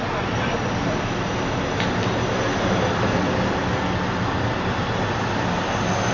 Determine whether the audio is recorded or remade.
recorded